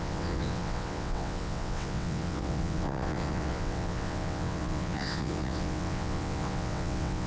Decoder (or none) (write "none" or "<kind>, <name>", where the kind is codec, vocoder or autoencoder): vocoder, WaveNeXt